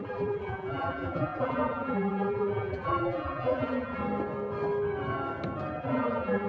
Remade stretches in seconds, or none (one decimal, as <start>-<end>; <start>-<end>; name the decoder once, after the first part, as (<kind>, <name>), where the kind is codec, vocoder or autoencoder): 0.0-4.0 (vocoder, BigVGAN v2); 5.8-6.5